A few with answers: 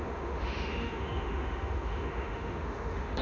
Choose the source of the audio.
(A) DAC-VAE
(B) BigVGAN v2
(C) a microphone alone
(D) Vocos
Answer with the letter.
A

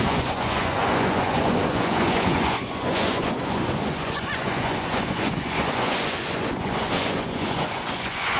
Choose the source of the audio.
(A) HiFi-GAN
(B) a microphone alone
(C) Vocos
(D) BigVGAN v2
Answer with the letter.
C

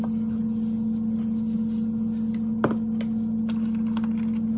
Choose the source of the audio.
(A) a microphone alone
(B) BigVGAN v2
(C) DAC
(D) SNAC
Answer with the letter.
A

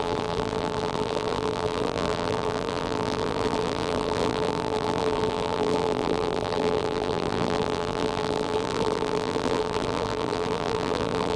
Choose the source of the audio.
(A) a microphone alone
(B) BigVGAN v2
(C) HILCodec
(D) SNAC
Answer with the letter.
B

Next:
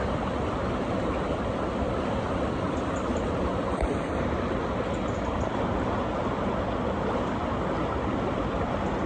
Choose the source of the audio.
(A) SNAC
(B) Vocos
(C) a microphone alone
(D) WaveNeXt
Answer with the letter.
C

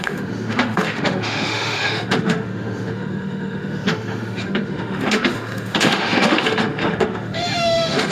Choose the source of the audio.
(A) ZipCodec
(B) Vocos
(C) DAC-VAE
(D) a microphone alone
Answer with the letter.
C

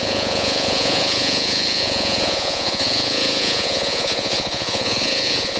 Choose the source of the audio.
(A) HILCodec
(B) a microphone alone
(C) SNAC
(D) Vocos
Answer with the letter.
D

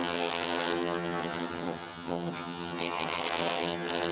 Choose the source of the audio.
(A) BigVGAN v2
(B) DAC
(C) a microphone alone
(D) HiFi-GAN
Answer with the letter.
D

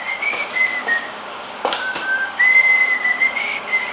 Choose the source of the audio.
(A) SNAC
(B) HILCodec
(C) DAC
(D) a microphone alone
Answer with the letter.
C